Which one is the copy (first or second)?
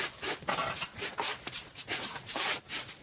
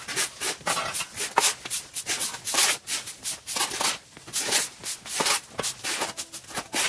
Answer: first